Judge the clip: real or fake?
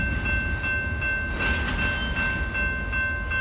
real